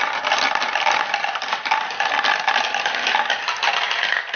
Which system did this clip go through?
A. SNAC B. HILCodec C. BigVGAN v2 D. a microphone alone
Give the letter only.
D